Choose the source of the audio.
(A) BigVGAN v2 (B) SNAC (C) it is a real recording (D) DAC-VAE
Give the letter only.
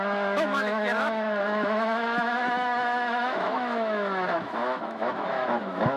D